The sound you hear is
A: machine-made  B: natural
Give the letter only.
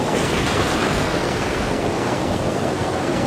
A